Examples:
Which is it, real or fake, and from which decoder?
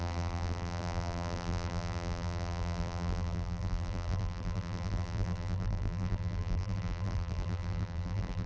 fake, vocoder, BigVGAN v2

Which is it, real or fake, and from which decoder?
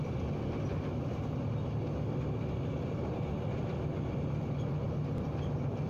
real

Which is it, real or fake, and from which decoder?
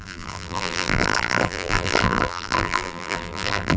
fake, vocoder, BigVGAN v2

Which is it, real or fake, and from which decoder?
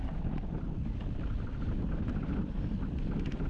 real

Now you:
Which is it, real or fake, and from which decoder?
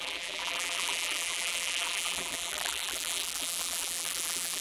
fake, vocoder, BigVGAN v2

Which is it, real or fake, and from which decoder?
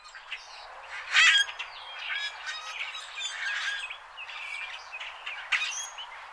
real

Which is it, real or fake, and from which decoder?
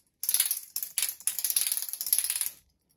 real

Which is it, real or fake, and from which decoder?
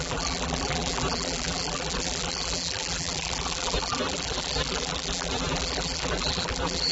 fake, vocoder, BigVGAN v2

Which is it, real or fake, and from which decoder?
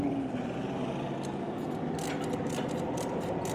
real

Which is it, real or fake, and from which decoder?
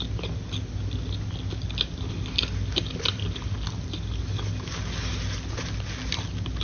real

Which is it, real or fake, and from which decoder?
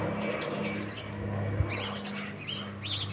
real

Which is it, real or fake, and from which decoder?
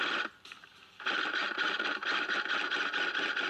real